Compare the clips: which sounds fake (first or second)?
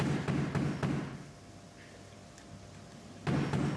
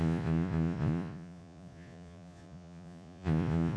second